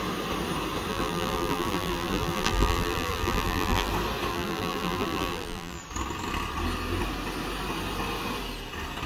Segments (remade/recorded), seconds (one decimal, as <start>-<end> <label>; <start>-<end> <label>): 0.0-0.9 recorded; 0.9-3.9 remade; 3.9-4.3 recorded; 4.3-5.8 remade; 5.8-9.1 recorded